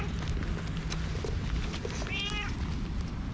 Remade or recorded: recorded